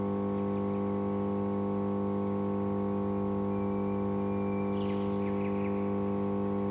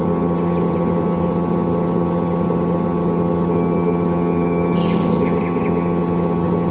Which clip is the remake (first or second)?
second